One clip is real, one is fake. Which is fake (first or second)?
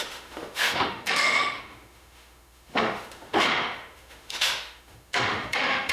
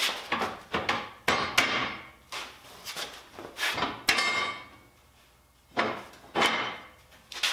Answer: first